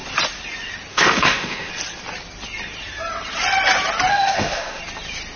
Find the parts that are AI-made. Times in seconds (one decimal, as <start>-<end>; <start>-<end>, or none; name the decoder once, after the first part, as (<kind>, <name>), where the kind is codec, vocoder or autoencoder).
0.9-1.7 (autoencoder, DAC-VAE); 4.1-4.8